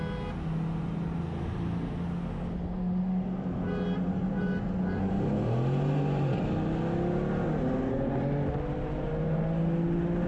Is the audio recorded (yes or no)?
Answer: yes